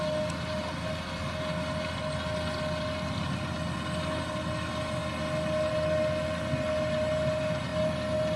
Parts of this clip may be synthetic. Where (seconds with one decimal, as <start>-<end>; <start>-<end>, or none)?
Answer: none